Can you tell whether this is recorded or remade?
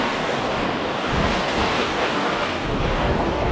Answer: remade